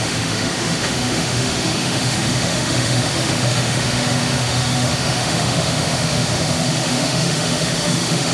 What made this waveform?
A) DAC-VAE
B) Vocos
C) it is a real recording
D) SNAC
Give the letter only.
A